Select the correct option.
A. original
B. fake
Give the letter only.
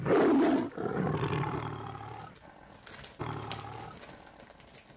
A